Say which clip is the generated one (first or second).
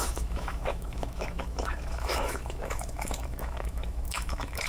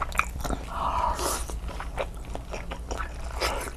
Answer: first